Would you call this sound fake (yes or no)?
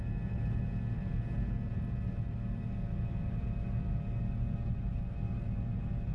no